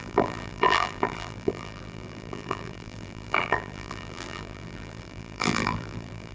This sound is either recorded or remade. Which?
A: remade